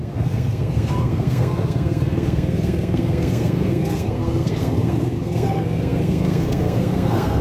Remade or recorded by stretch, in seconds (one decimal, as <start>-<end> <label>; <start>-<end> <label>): 0.0-7.4 remade